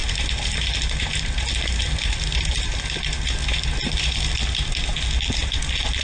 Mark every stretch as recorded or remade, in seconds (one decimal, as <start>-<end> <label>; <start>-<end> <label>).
0.0-6.0 recorded